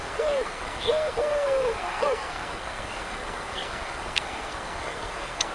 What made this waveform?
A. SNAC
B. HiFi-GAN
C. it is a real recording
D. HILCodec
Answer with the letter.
A